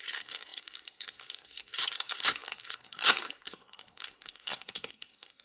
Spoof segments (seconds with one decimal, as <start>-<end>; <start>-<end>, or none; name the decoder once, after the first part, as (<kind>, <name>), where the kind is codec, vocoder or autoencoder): 0.0-5.4 (codec, SNAC)